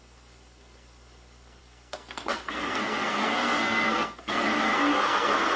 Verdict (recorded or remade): remade